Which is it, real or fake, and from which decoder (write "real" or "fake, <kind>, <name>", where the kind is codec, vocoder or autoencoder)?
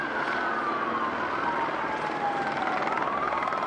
real